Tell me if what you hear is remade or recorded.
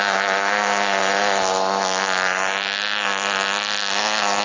recorded